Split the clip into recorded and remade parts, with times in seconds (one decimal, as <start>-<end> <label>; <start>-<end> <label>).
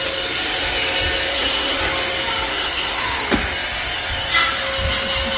0.0-1.3 recorded; 1.3-1.8 remade; 1.8-2.5 recorded; 2.5-3.0 remade; 3.0-5.4 recorded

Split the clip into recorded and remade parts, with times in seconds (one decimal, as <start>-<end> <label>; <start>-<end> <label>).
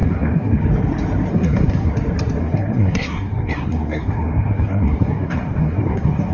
0.0-0.6 remade; 0.6-1.3 recorded; 1.3-1.9 remade; 1.9-2.4 recorded; 2.4-6.3 remade